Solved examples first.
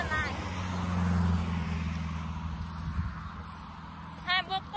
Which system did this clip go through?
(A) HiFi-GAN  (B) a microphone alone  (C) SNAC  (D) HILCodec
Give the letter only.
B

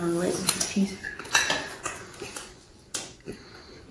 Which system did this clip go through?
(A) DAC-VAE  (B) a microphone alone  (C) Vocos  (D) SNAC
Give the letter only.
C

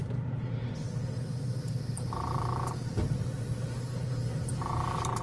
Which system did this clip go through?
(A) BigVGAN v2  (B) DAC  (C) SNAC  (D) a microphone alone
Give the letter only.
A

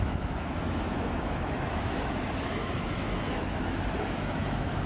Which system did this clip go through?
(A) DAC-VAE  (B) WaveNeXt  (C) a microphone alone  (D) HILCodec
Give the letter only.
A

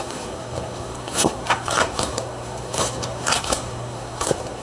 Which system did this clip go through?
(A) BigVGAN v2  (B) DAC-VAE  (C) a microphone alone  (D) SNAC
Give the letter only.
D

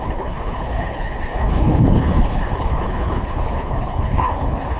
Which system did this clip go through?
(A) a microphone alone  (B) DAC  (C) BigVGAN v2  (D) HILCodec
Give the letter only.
D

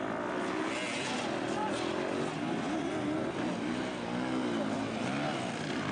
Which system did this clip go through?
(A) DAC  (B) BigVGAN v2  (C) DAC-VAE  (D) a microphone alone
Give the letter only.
D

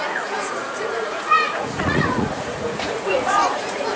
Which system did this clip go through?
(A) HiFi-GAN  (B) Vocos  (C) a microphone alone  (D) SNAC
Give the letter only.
B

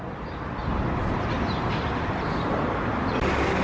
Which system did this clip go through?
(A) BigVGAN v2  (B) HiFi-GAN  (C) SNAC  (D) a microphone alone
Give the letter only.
D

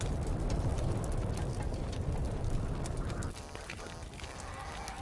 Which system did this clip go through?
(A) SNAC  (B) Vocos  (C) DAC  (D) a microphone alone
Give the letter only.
D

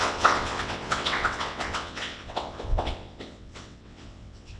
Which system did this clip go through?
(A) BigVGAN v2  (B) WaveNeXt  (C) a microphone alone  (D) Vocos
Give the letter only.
B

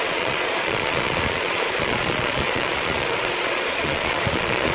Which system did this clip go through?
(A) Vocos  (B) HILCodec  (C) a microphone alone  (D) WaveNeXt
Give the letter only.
A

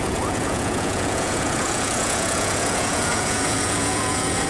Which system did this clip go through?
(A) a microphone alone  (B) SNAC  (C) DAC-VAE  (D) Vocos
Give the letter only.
D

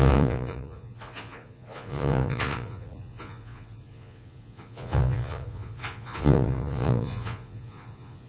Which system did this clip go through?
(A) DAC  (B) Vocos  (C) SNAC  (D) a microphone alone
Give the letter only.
B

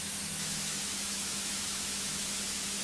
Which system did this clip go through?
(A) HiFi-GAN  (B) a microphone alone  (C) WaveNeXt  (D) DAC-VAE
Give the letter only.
D